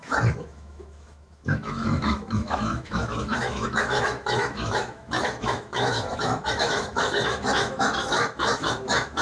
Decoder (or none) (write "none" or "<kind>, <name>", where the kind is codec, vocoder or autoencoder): autoencoder, DAC-VAE